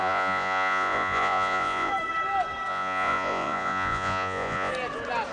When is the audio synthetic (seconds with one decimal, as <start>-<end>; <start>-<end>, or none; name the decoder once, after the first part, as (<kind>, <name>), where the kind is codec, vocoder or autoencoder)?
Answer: 0.0-1.9 (vocoder, Vocos); 2.7-4.7